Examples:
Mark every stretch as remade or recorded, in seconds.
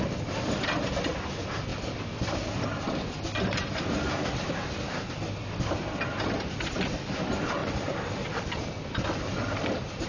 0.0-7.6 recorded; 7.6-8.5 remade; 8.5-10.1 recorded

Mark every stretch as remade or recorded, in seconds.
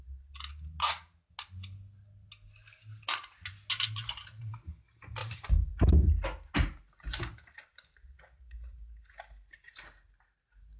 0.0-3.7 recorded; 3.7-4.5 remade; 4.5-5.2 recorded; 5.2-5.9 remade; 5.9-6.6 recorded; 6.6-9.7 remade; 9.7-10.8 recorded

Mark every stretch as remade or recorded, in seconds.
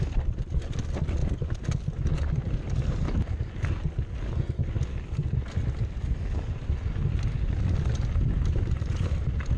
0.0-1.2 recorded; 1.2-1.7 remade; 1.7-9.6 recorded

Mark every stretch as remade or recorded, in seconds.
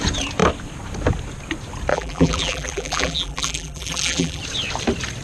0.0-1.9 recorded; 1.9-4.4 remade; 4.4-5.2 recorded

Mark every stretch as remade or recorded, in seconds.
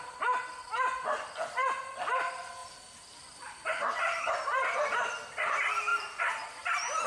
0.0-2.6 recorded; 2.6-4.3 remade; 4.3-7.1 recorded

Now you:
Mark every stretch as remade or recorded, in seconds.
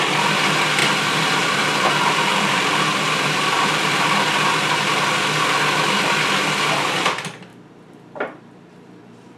0.0-0.8 recorded; 0.8-4.3 remade; 4.3-7.5 recorded; 7.5-9.4 remade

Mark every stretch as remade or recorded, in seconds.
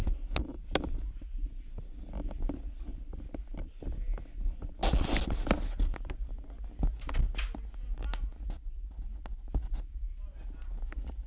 0.0-11.3 recorded